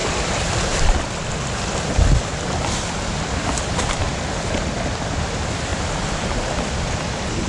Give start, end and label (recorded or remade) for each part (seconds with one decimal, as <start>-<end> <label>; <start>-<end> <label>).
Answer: 0.0-7.5 recorded